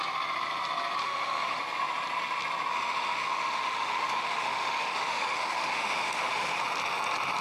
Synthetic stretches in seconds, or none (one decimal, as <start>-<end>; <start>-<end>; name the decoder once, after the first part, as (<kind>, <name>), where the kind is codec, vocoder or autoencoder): 1.0-1.6 (autoencoder, DAC-VAE); 2.7-6.6